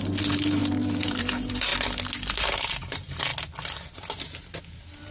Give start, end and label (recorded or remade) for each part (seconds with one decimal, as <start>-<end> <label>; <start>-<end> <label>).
0.0-1.7 remade; 1.7-2.3 recorded; 2.3-3.3 remade; 3.3-4.6 recorded; 4.6-5.1 remade